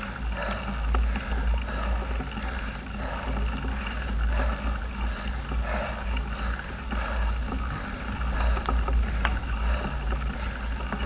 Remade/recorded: recorded